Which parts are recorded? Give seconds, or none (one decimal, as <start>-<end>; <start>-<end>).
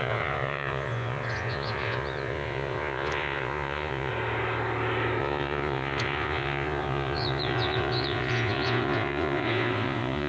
4.1-5.2